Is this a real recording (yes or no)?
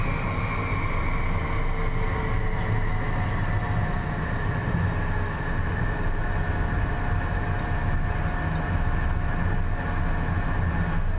yes